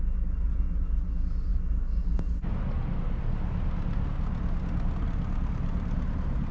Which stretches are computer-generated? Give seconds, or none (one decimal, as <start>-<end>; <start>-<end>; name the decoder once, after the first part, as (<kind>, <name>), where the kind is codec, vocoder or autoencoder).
none